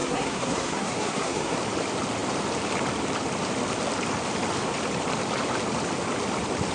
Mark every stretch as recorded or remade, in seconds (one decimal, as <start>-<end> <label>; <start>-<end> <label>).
0.0-1.6 remade; 1.6-6.7 recorded